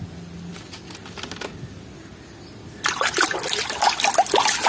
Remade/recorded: recorded